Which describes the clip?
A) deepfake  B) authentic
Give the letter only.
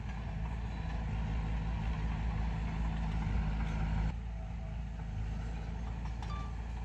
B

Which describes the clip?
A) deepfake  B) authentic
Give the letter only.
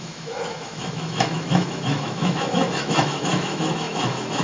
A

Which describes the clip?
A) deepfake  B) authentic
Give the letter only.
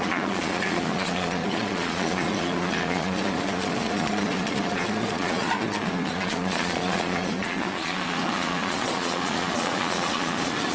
A